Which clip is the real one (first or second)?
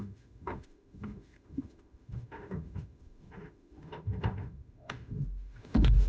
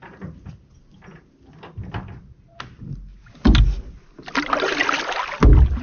second